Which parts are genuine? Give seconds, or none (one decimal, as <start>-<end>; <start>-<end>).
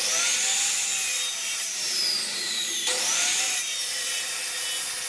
0.0-1.3; 4.4-5.1